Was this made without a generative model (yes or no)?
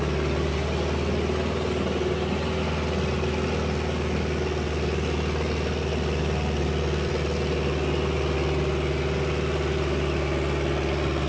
yes